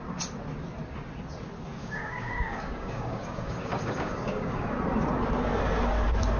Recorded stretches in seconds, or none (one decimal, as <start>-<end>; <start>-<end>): 0.0-1.8; 4.5-6.4